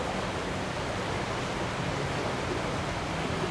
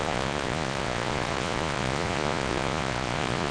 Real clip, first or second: first